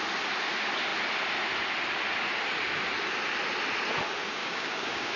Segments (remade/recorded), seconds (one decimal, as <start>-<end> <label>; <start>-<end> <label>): 0.0-4.4 recorded; 4.4-5.2 remade